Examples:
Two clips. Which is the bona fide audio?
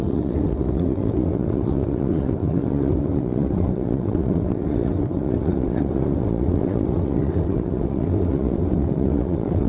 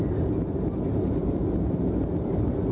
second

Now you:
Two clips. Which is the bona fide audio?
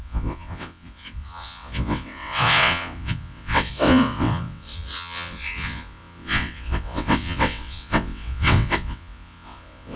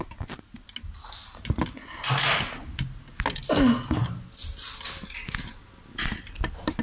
second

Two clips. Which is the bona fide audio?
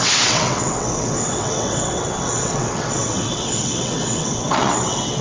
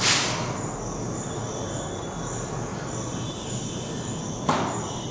second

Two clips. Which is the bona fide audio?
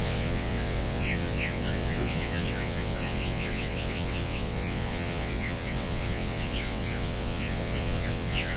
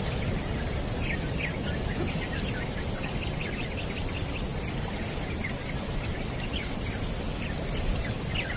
second